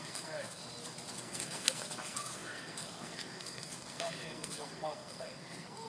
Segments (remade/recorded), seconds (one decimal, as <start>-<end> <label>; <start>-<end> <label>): 0.0-0.6 remade; 0.6-1.1 recorded; 1.1-5.9 remade